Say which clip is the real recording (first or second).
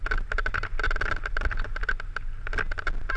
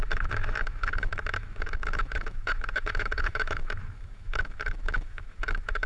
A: first